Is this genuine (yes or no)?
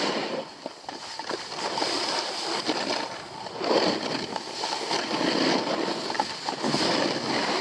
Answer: yes